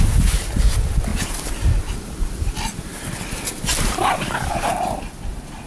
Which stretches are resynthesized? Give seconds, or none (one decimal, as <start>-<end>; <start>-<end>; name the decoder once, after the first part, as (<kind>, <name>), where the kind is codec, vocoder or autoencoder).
none